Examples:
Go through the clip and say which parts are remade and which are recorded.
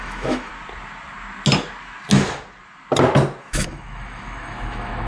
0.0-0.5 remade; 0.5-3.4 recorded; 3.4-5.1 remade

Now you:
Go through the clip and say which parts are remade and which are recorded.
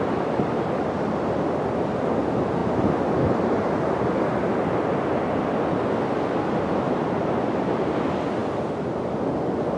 0.0-9.8 recorded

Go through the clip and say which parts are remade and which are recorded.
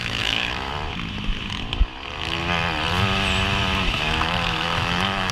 0.0-0.7 remade; 0.7-3.9 recorded; 3.9-5.3 remade